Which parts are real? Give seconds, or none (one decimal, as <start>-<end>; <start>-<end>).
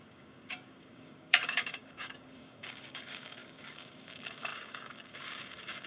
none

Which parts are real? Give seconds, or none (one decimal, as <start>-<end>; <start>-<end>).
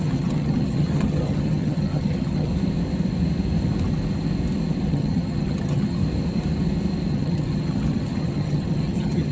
2.5-4.9; 6.0-7.1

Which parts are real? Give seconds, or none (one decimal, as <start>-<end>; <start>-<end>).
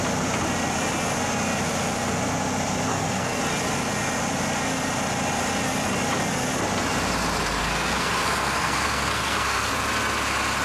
0.0-2.9; 3.4-7.6; 9.7-10.6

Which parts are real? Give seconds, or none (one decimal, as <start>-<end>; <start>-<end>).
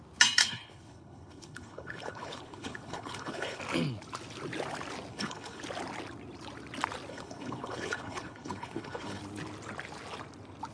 0.0-0.4; 3.6-5.1; 5.6-7.1; 9.2-10.7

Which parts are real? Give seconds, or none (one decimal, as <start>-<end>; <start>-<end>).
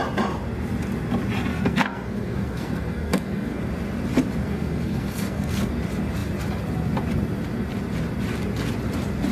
0.0-1.5; 3.6-4.4; 5.7-9.3